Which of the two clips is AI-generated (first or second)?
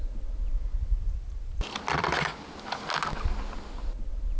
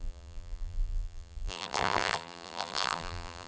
second